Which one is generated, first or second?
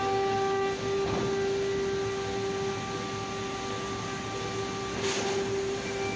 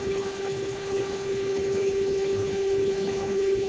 second